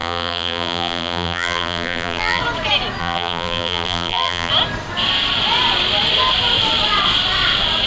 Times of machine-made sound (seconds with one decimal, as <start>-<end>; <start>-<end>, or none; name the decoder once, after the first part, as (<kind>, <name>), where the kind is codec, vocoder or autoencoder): 0.0-2.4 (vocoder, BigVGAN v2); 3.0-4.5